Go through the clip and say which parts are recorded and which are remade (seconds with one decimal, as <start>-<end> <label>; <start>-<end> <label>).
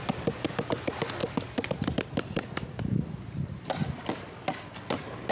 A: 0.0-5.3 recorded